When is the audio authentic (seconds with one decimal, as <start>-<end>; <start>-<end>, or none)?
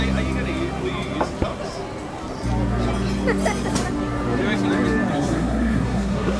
0.0-5.1